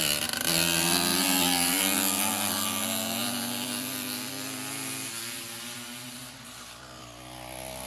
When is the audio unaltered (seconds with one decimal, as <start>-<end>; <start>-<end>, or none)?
0.0-1.1; 1.8-3.2; 6.8-7.9